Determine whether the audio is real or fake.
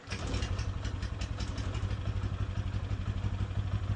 real